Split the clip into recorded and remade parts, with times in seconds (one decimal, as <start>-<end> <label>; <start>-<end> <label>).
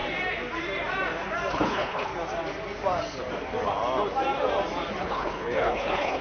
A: 0.0-1.5 recorded; 1.5-2.1 remade; 2.1-5.0 recorded; 5.0-6.2 remade